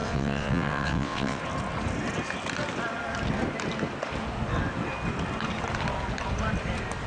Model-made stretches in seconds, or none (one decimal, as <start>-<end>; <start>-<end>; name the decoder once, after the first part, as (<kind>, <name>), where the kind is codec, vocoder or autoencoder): 0.0-1.4 (vocoder, WaveNeXt)